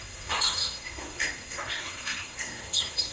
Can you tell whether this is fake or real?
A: fake